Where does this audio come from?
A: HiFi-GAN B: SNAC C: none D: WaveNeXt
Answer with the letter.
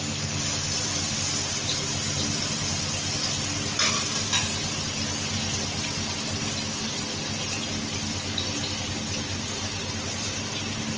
C